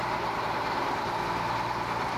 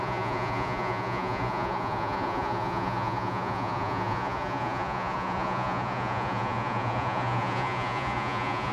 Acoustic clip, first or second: first